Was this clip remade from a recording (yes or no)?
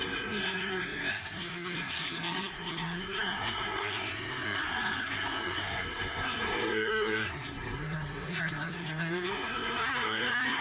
yes